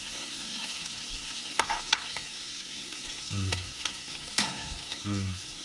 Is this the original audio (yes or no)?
no